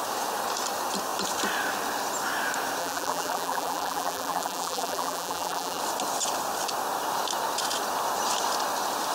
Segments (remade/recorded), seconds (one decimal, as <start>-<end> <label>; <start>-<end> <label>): 0.0-2.8 recorded; 2.8-5.8 remade; 5.8-9.1 recorded